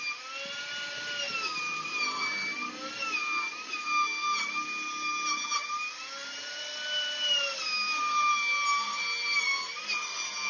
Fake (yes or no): no